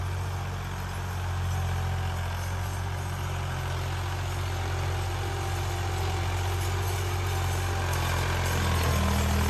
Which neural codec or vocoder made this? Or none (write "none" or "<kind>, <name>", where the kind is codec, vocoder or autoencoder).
none